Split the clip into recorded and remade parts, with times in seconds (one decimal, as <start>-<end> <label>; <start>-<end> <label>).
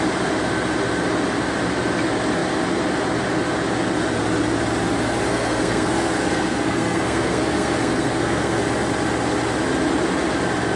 0.0-5.3 recorded; 5.3-8.6 remade; 8.6-10.8 recorded